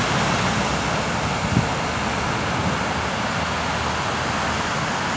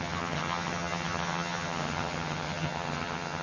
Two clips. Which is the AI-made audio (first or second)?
second